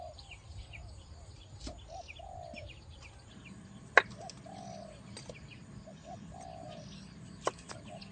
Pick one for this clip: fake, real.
real